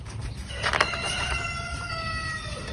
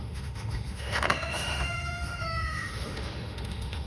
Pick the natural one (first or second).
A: first